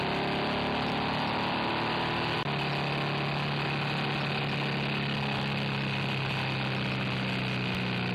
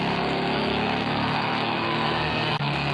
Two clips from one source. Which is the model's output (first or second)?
second